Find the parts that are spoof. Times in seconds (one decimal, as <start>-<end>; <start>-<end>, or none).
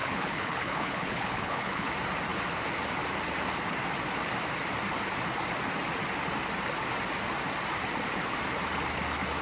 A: 0.0-1.9